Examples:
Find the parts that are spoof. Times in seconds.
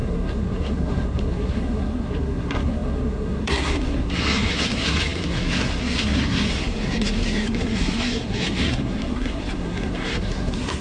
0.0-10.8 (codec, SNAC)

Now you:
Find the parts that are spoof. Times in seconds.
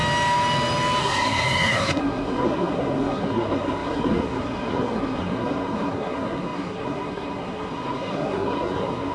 1.0-9.1 (codec, SNAC)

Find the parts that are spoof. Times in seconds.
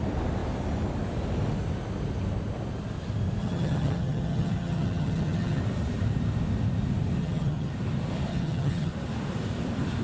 3.4-5.6 (vocoder, HiFi-GAN); 7.2-7.7; 8.3-8.9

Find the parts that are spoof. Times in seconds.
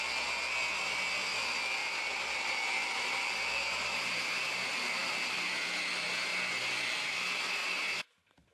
1.8-4.4 (vocoder, BigVGAN v2)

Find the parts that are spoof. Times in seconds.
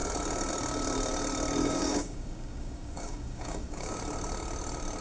1.6-4.0 (codec, DAC)